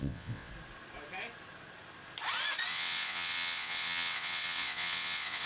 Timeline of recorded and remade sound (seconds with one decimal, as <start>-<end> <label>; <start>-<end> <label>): 0.0-0.5 remade; 0.5-2.7 recorded; 2.7-5.5 remade

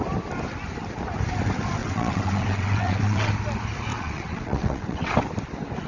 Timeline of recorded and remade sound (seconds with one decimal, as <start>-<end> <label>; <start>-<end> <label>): 0.0-1.8 recorded; 1.8-3.3 remade; 3.3-3.9 recorded; 3.9-5.1 remade; 5.1-5.9 recorded

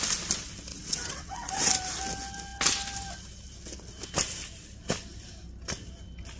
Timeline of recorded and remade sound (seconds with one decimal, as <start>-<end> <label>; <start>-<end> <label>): 0.0-0.7 recorded; 0.7-1.7 remade; 1.7-6.4 recorded

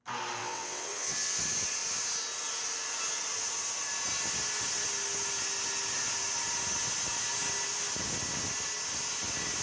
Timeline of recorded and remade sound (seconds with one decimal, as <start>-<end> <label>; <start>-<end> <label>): 0.0-0.4 recorded; 0.4-1.4 remade; 1.4-9.6 recorded

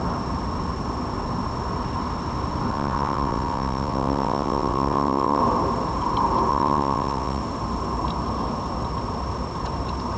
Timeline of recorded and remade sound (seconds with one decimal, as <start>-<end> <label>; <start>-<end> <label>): 0.0-2.7 recorded; 2.7-5.4 remade; 5.4-6.5 recorded; 6.5-7.4 remade; 7.4-10.2 recorded

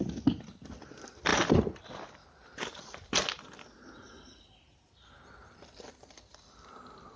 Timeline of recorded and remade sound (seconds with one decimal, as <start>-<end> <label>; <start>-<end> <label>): 0.0-7.2 recorded

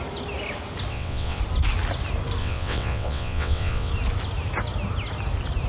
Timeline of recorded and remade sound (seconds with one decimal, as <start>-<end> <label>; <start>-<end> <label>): 0.0-0.9 recorded; 0.9-1.4 remade; 1.4-2.4 recorded; 2.4-3.9 remade; 3.9-5.7 recorded